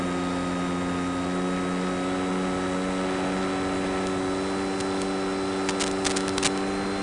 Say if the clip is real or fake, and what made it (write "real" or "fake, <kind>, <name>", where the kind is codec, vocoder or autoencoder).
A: real